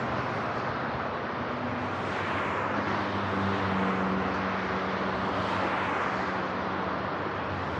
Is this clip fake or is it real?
real